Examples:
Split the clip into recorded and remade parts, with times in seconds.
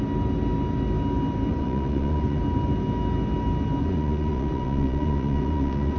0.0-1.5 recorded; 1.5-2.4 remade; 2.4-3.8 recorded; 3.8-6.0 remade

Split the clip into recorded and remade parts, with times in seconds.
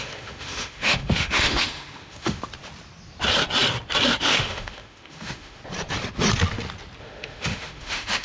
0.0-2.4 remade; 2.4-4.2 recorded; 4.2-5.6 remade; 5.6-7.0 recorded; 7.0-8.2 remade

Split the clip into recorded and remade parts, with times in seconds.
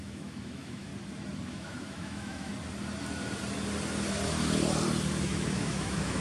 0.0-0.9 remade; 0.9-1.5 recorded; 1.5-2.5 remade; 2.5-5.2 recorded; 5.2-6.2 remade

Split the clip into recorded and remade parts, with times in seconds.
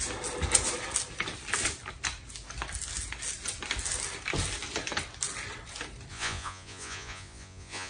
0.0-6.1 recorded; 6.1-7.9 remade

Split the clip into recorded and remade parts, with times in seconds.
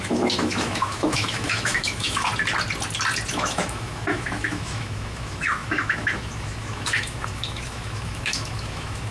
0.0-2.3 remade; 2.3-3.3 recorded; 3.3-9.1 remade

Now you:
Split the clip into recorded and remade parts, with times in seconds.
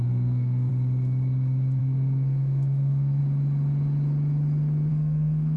0.0-0.7 remade; 0.7-1.8 recorded; 1.8-3.2 remade; 3.2-4.9 recorded; 4.9-5.6 remade